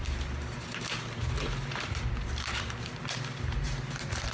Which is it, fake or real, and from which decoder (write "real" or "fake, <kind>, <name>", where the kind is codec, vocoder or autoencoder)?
fake, vocoder, BigVGAN v2